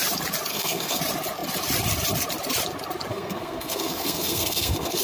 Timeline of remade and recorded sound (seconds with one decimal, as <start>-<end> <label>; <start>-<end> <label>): 0.0-0.5 recorded; 0.5-1.0 remade; 1.0-3.1 recorded; 3.1-5.0 remade